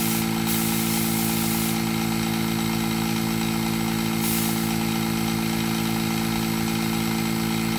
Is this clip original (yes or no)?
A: yes